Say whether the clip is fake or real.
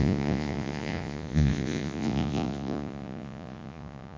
fake